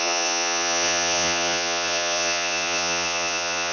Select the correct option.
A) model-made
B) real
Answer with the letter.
A